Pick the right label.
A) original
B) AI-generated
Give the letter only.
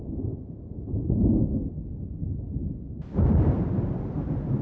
A